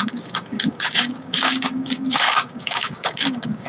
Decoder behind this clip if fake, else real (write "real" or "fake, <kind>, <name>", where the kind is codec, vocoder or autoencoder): fake, codec, DAC